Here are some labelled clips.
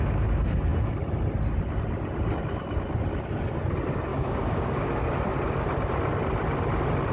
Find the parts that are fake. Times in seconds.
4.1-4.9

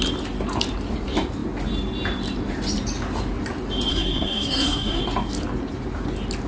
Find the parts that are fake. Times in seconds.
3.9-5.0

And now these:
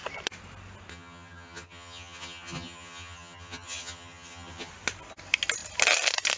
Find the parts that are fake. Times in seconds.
0.9-4.7